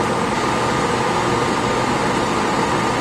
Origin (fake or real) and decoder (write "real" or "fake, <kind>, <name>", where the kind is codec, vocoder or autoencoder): real